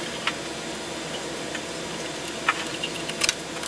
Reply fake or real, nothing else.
real